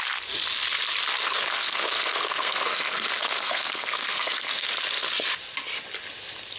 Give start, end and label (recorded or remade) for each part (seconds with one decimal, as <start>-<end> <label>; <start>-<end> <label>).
0.0-1.2 recorded; 1.2-4.7 remade; 4.7-6.6 recorded